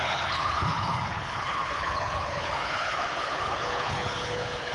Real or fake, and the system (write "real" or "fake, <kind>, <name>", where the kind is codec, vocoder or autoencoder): fake, codec, HILCodec